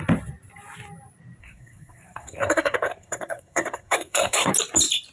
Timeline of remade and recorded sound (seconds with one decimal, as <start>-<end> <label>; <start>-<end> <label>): 0.0-1.4 recorded; 1.4-4.5 remade; 4.5-5.1 recorded